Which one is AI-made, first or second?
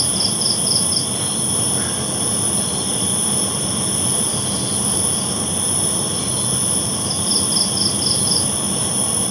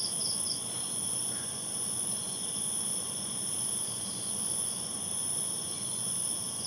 second